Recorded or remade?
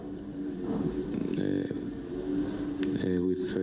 recorded